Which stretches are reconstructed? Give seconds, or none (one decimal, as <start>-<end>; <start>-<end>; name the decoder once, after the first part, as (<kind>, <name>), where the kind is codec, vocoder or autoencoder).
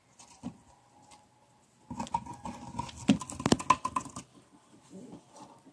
none